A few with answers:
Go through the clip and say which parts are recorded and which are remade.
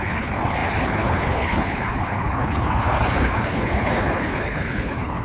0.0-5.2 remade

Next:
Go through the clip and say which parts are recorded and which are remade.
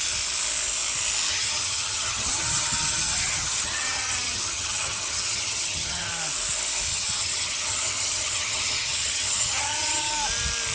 0.0-1.3 recorded; 1.3-6.1 remade; 6.1-6.9 recorded; 6.9-10.1 remade; 10.1-10.7 recorded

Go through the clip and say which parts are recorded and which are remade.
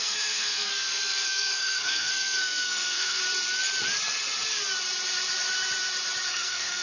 0.0-3.2 remade; 3.2-6.3 recorded; 6.3-6.8 remade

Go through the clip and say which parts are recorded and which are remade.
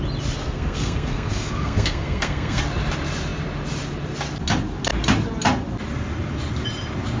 0.0-0.4 recorded; 0.4-2.6 remade; 2.6-7.2 recorded